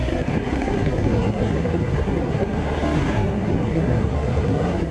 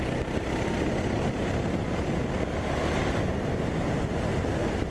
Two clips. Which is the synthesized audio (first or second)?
first